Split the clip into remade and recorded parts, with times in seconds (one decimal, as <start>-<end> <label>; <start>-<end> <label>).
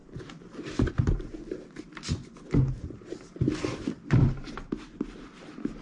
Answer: 0.0-5.8 recorded